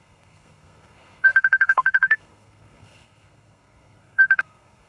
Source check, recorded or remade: remade